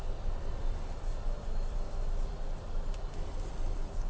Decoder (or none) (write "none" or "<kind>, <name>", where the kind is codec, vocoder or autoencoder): none